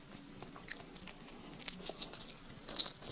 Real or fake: real